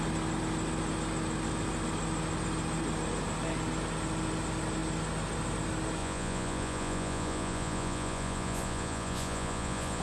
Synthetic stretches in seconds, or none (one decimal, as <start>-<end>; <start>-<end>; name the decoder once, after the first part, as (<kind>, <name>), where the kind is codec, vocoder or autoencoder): 6.0-10.0 (vocoder, Vocos)